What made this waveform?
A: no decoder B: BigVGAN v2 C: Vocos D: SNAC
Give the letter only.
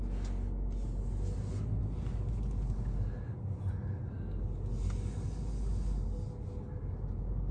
A